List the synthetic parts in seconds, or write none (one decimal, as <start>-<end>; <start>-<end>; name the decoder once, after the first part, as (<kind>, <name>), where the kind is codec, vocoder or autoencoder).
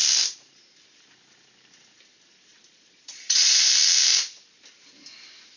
2.5-3.7 (vocoder, Vocos)